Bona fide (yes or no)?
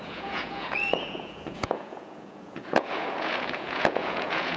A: no